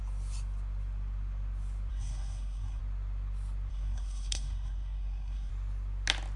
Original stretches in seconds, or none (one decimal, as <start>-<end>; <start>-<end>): 0.0-1.9; 2.8-3.7; 5.5-6.4